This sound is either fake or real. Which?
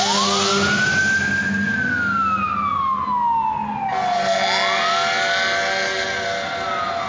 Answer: real